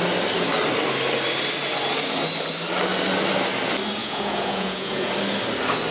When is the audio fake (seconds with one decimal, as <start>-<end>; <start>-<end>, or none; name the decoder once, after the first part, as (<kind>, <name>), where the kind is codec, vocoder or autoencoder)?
4.0-5.1 (vocoder, Vocos)